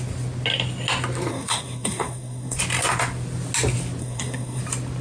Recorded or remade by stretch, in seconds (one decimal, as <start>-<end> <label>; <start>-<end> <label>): 0.0-1.3 recorded; 1.3-2.6 remade; 2.6-4.0 recorded; 4.0-4.6 remade; 4.6-5.0 recorded